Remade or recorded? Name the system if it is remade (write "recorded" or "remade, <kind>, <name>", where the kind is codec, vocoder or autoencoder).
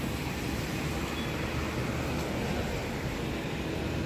recorded